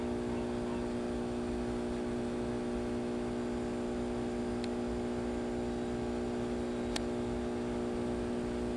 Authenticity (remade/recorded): recorded